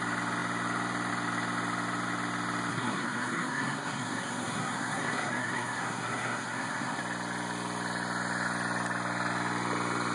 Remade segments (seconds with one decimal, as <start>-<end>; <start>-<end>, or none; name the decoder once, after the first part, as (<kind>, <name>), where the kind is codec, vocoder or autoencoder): 2.7-7.0 (codec, SNAC)